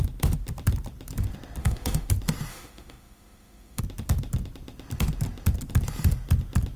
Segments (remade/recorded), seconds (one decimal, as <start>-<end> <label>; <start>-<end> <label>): 0.0-1.6 recorded; 1.6-2.1 remade; 2.1-2.5 recorded; 2.5-3.8 remade; 3.8-6.8 recorded